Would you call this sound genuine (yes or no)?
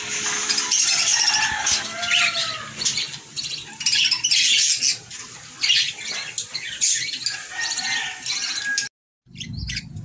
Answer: yes